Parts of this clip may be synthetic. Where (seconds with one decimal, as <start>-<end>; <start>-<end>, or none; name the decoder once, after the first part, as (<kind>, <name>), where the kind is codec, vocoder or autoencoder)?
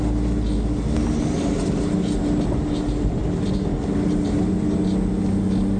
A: none